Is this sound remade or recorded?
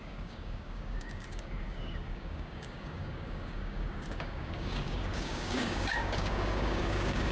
remade